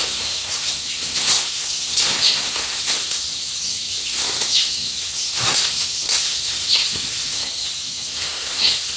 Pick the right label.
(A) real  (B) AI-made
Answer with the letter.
B